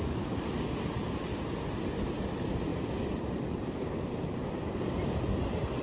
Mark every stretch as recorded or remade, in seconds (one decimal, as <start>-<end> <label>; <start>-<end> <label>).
0.0-5.8 recorded